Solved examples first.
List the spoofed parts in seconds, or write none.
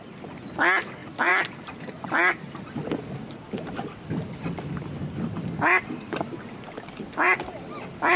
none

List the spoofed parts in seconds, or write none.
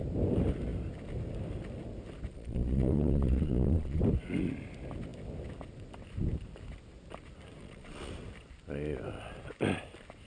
2.3-4.0; 7.6-8.1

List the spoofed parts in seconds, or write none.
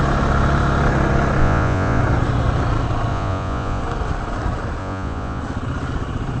1.4-2.0; 3.1-3.8; 4.8-5.4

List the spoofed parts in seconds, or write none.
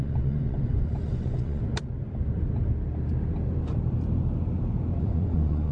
0.0-1.6; 5.0-5.7